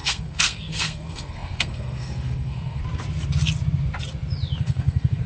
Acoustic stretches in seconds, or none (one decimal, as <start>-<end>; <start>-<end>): 2.8-4.6